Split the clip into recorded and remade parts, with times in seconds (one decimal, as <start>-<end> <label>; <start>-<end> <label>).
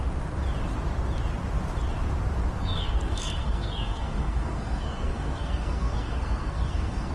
0.0-2.6 recorded; 2.6-7.1 remade